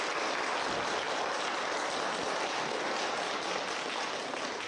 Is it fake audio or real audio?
real